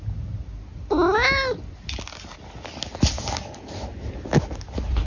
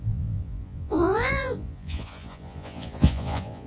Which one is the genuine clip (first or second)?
first